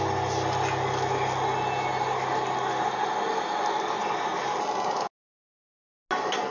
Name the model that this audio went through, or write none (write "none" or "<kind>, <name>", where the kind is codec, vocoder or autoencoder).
none